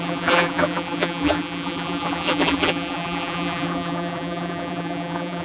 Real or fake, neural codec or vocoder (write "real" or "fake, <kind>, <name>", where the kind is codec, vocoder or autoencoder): fake, vocoder, BigVGAN v2